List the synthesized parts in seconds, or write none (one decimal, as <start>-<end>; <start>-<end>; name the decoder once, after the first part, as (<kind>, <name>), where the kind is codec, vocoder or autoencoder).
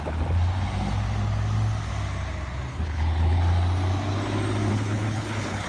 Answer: 2.7-3.4 (codec, HILCodec); 4.7-5.7